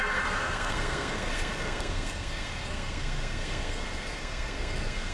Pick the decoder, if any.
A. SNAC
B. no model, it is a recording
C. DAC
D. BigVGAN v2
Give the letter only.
A